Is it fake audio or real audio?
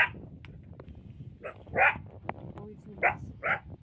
real